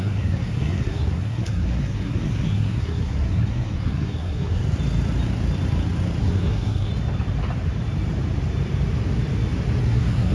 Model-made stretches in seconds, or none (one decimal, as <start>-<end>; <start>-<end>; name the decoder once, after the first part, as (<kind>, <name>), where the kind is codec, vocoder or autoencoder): 0.0-4.6 (codec, SNAC); 6.2-6.9; 9.8-10.3